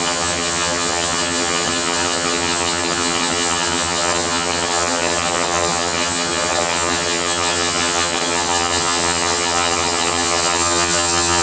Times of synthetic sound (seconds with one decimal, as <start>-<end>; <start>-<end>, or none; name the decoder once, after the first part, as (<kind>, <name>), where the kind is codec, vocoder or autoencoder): 0.0-11.4 (vocoder, HiFi-GAN)